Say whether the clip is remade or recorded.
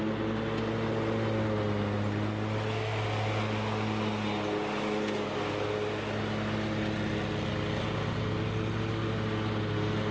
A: recorded